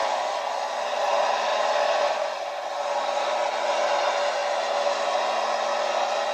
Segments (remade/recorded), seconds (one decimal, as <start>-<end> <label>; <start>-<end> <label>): 0.0-1.1 remade; 1.1-1.5 recorded; 1.5-3.9 remade; 3.9-6.3 recorded